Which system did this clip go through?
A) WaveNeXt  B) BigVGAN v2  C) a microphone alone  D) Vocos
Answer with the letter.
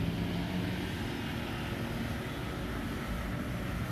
C